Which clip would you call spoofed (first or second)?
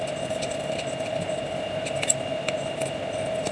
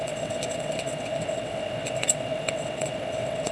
second